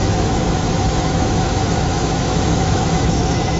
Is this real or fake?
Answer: fake